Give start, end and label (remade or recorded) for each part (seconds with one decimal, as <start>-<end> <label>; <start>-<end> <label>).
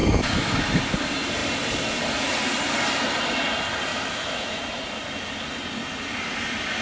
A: 0.0-0.8 remade; 0.8-3.9 recorded; 3.9-4.6 remade; 4.6-6.8 recorded